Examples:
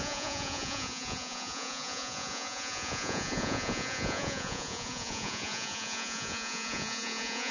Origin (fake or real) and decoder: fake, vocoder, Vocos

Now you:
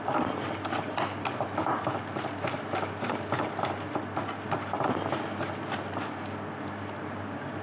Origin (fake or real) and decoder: real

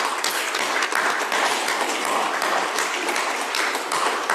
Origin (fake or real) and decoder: real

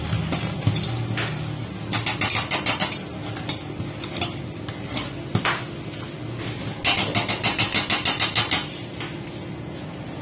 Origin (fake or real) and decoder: real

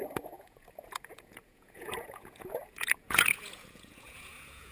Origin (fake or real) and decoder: fake, vocoder, Vocos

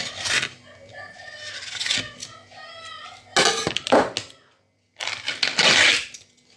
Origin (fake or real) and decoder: real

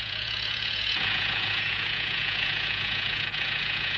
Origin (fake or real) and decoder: fake, vocoder, Vocos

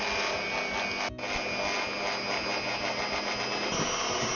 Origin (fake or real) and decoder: real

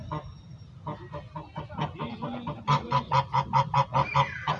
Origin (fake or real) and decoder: real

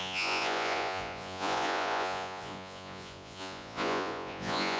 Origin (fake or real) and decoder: fake, vocoder, Vocos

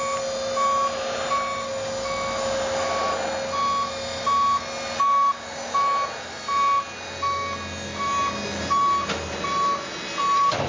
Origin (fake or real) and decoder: real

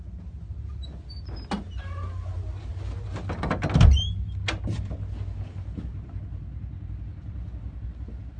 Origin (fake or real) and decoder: real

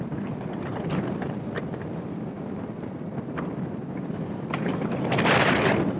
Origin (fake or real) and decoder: real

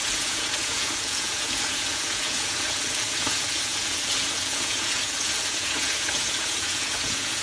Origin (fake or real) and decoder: fake, vocoder, Vocos